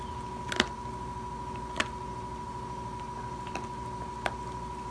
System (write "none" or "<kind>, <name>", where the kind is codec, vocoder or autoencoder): none